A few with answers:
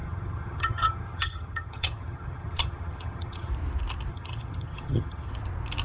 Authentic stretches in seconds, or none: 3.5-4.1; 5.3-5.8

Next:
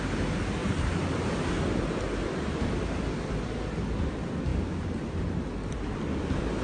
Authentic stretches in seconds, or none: 0.0-6.6